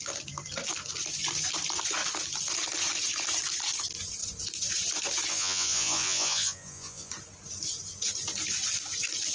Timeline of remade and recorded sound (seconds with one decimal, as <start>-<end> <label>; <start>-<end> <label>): 0.0-5.3 recorded; 5.3-7.1 remade; 7.1-9.3 recorded